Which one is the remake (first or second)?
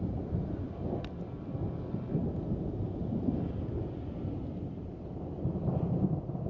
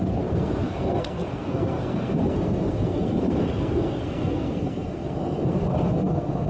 second